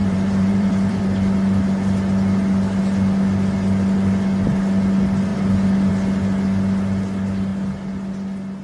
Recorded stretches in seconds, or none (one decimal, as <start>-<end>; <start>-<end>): 1.0-8.6

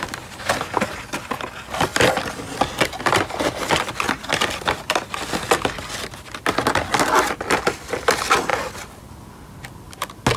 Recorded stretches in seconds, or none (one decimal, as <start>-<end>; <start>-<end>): 0.0-10.4

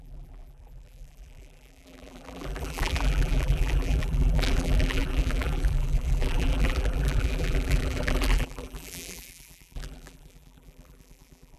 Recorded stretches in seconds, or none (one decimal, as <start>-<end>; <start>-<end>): none

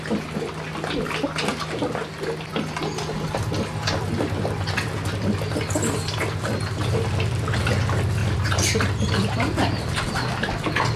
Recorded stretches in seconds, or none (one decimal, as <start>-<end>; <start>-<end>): 0.0-8.2; 9.3-11.0

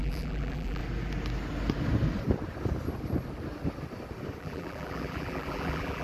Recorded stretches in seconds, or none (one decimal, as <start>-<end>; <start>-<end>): 0.8-4.4

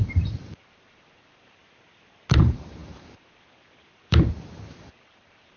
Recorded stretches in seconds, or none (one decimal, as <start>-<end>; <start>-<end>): 1.6-2.4

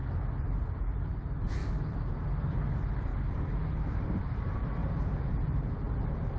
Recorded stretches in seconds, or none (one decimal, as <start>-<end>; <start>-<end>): 3.1-3.9